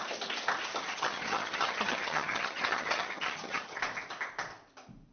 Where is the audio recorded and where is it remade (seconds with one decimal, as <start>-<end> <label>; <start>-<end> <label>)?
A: 0.0-0.9 recorded; 0.9-3.8 remade; 3.8-5.1 recorded

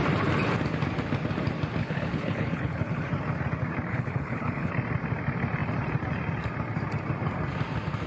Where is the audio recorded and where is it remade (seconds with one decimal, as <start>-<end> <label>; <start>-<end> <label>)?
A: 0.0-1.8 recorded; 1.8-3.1 remade; 3.1-3.9 recorded; 3.9-4.7 remade; 4.7-8.1 recorded

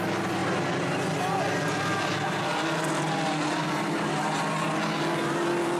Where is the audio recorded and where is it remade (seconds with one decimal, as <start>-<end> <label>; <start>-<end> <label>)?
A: 0.0-5.8 recorded

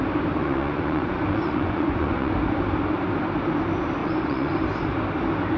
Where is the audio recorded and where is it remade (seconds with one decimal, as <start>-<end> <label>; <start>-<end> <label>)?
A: 0.0-0.4 recorded; 0.4-2.3 remade; 2.3-4.0 recorded; 4.0-4.5 remade; 4.5-5.6 recorded

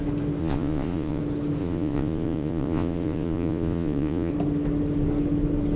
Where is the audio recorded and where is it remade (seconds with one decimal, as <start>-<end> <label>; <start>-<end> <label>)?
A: 0.0-0.4 recorded; 0.4-1.2 remade; 1.2-1.6 recorded; 1.6-4.3 remade; 4.3-5.8 recorded